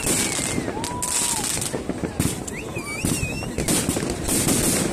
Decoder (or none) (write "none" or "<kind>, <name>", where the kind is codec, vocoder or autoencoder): none